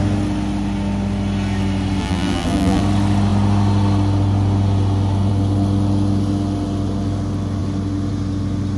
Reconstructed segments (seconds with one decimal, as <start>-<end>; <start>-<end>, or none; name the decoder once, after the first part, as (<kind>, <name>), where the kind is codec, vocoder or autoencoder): 2.0-2.8 (vocoder, BigVGAN v2)